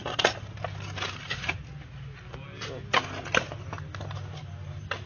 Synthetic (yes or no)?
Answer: no